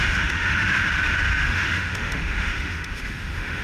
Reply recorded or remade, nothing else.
remade